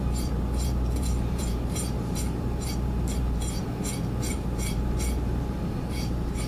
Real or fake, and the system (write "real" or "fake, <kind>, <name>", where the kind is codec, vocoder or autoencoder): fake, vocoder, BigVGAN v2